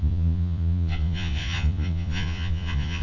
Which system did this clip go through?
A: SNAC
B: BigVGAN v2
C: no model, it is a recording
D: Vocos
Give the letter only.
D